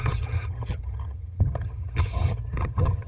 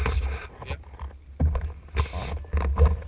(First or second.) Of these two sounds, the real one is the second